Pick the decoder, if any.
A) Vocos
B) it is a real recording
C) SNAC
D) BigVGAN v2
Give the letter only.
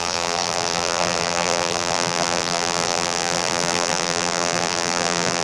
D